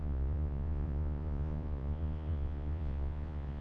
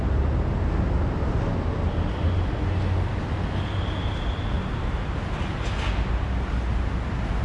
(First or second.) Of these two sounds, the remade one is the first